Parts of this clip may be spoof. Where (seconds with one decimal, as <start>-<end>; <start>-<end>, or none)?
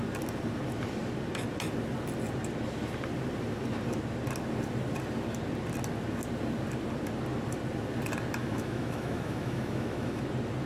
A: 8.4-10.2